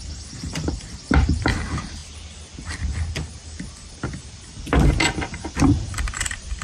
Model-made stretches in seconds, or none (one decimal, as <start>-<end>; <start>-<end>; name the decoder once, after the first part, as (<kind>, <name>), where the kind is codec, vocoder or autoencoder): 0.0-2.0 (vocoder, BigVGAN v2); 5.6-6.6